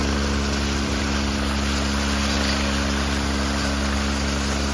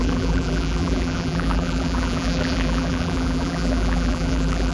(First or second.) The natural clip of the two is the first